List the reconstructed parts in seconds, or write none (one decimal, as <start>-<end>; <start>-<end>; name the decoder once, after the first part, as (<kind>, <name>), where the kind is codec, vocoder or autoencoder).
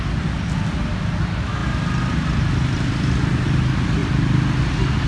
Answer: none